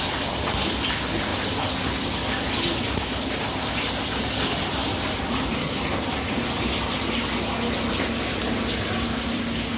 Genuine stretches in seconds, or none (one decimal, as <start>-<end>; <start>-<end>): 0.0-9.8